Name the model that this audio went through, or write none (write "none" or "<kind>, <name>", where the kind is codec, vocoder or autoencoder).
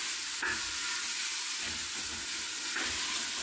none